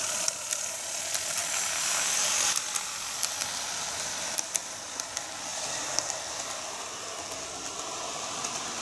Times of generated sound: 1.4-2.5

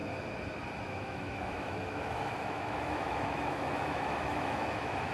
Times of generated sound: 0.8-5.1